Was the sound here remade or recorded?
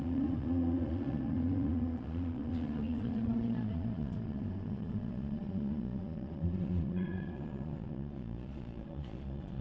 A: remade